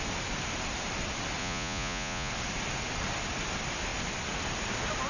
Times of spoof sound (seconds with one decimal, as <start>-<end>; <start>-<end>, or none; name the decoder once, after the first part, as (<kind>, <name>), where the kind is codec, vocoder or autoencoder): 1.4-2.3 (vocoder, Vocos)